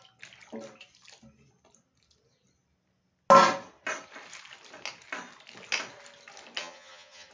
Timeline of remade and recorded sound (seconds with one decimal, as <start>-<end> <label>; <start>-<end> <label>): 0.0-6.6 recorded; 6.6-7.3 remade